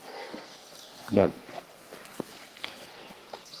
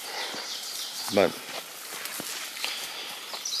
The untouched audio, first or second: second